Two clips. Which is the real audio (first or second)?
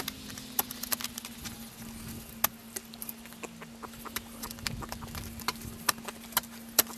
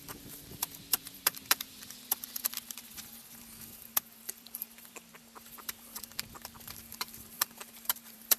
first